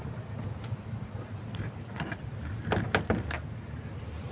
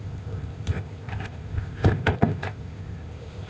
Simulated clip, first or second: second